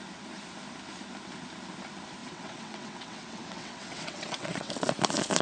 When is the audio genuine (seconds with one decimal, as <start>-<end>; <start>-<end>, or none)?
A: 0.0-2.2; 4.7-5.4